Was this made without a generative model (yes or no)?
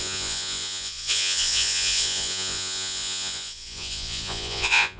no